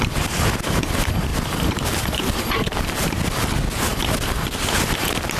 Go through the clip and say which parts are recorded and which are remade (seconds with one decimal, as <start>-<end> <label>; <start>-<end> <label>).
0.0-1.3 recorded; 1.3-3.2 remade; 3.2-5.4 recorded